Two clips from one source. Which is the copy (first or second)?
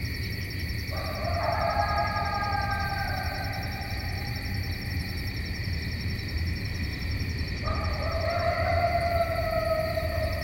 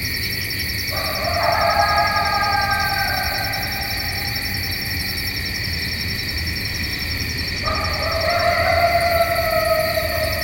first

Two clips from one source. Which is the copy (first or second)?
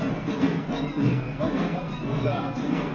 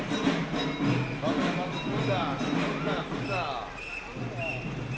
first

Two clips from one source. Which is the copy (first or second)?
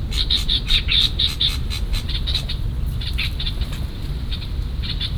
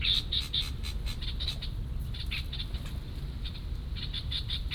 first